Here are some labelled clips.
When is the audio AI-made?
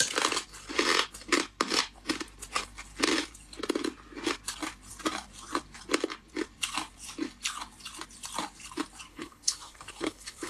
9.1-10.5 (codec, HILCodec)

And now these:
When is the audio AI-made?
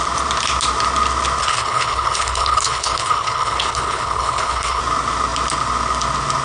1.4-4.8 (codec, HILCodec)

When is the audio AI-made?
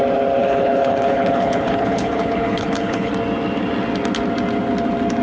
0.4-3.1 (codec, HILCodec)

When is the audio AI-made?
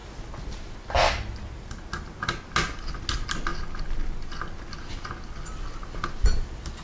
none